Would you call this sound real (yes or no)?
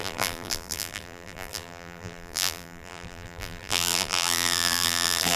no